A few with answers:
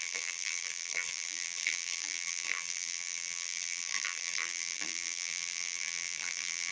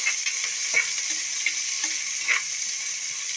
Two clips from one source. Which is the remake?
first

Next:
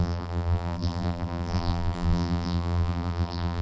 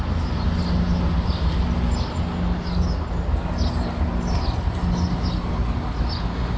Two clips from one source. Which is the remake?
first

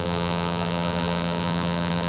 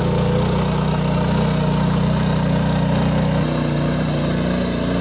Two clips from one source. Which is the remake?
first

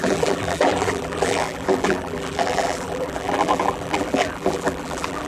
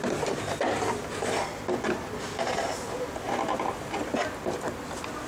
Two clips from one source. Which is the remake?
first